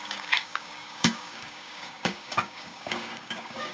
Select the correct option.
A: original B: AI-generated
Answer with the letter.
B